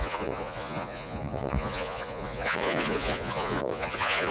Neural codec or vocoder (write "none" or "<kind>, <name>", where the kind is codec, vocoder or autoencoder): vocoder, Vocos